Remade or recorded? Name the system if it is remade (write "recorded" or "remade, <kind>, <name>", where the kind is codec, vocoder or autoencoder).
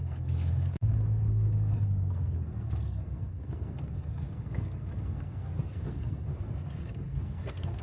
remade, codec, SNAC